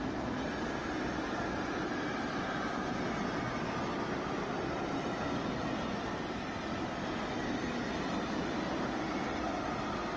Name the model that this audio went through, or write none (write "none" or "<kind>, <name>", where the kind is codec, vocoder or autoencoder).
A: none